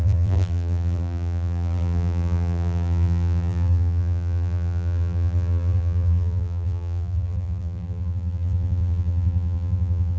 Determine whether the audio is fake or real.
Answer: fake